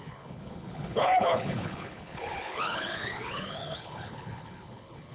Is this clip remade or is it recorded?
remade